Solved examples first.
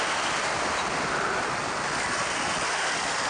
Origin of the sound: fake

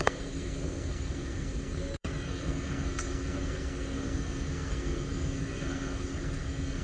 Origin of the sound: fake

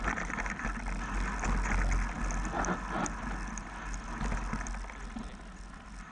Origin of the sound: real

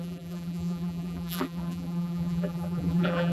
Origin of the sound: fake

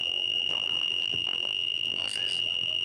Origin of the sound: fake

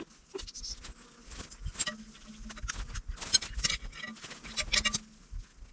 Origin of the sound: real